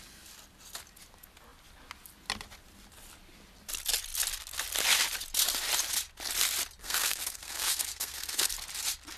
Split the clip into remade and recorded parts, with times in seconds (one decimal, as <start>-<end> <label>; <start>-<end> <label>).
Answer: 0.0-6.8 recorded; 6.8-8.5 remade; 8.5-9.2 recorded